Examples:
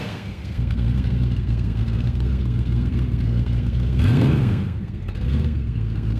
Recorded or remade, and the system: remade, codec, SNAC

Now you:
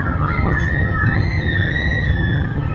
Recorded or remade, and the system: remade, vocoder, HiFi-GAN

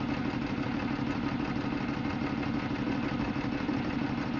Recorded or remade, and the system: recorded